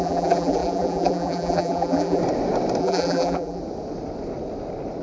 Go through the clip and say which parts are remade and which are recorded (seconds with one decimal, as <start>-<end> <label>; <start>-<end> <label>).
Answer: 0.0-2.2 remade; 2.2-2.8 recorded; 2.8-3.6 remade; 3.6-5.0 recorded